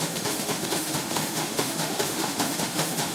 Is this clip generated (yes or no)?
yes